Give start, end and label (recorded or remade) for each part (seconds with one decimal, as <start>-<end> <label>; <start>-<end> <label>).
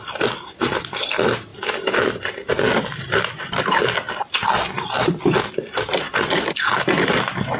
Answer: 0.0-7.6 recorded